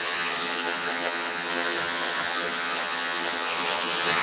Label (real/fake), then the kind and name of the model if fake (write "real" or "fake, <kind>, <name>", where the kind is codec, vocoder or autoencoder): fake, vocoder, HiFi-GAN